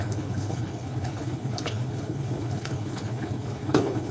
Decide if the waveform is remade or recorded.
remade